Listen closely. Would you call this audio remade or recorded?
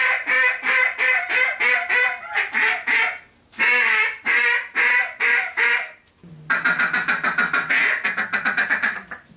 recorded